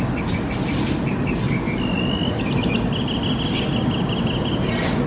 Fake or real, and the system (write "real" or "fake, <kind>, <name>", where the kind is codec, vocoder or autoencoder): real